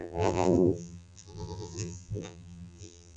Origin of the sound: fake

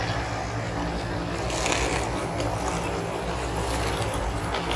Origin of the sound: real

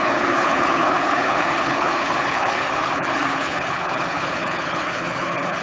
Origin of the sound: fake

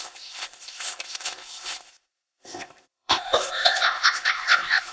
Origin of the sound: fake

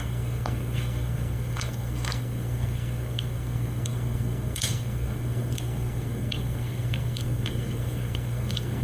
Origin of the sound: fake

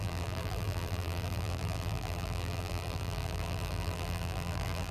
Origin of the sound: fake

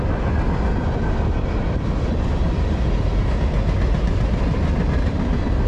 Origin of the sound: real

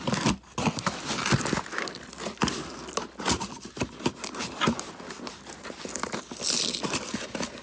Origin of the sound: real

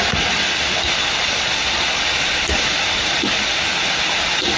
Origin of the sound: real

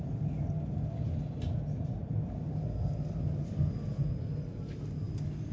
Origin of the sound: real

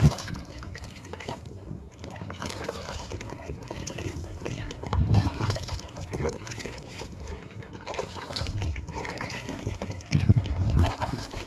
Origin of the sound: fake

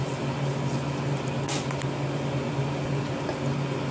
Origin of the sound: real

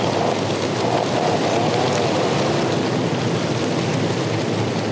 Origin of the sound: real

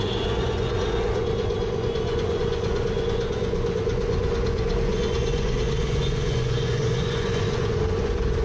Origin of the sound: fake